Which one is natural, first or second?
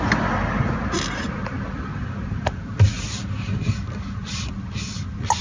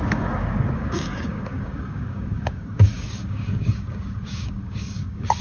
first